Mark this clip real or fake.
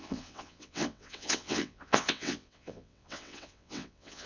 fake